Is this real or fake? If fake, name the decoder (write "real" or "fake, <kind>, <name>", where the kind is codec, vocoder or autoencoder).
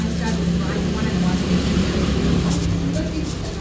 real